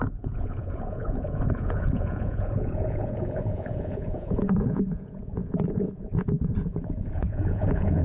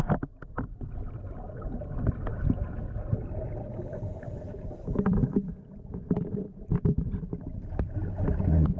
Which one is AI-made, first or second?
first